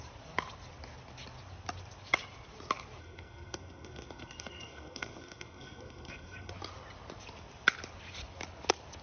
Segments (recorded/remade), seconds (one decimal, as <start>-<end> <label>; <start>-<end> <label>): 0.0-3.0 recorded; 3.0-6.5 remade; 6.5-9.0 recorded